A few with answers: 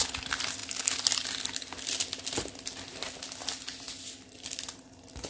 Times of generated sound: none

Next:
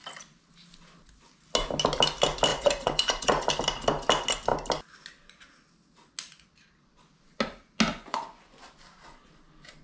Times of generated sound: 2.5-3.5 (vocoder, Vocos); 7.9-8.6